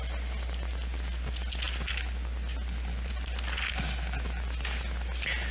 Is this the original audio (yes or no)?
yes